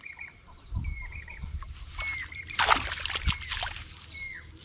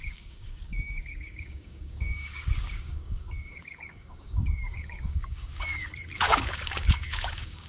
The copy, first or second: second